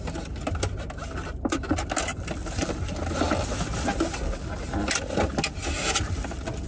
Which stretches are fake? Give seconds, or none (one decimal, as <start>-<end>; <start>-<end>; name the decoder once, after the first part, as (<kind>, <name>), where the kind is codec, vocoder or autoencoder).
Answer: none